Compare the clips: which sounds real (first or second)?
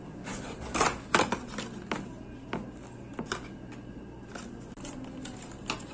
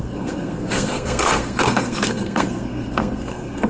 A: first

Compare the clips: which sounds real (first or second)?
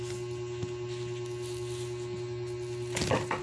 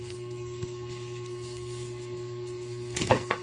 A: first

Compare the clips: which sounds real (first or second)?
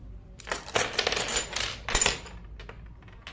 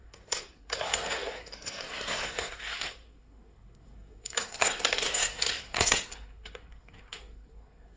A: first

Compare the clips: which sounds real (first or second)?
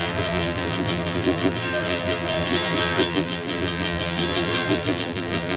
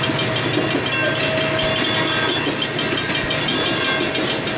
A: second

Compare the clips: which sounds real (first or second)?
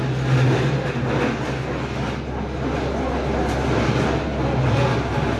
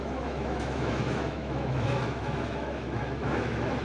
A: first